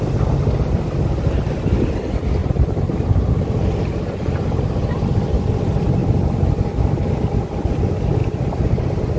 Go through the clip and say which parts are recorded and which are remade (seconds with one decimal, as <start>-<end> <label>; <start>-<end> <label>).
0.0-2.4 recorded; 2.4-4.6 remade; 4.6-9.2 recorded